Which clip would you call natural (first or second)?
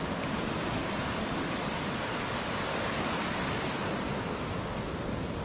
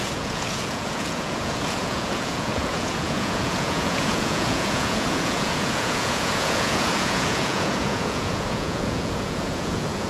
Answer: first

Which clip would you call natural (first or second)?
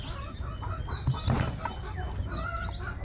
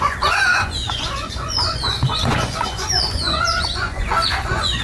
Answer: first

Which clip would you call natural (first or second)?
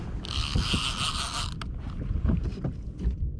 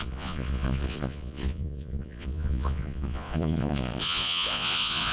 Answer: first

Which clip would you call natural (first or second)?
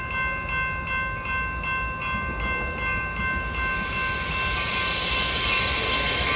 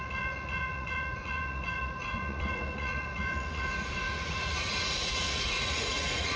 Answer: first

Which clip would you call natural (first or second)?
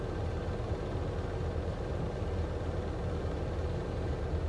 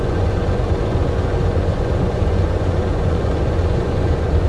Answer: first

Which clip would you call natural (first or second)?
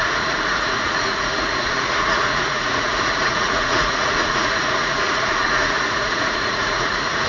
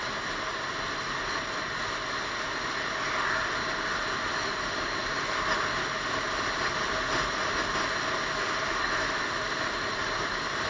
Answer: second